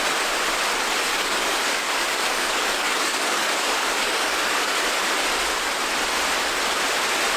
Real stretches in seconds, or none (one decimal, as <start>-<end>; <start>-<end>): 0.0-1.1; 4.8-7.4